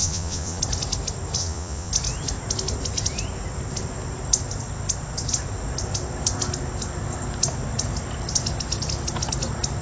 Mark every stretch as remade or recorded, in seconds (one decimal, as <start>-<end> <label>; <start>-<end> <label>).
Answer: 0.0-0.6 remade; 0.6-1.4 recorded; 1.4-1.9 remade; 1.9-9.8 recorded